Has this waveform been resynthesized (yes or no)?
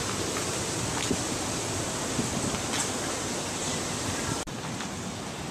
no